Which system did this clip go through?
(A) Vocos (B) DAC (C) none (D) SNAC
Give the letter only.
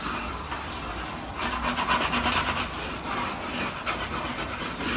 C